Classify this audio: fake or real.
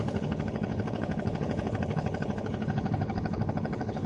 fake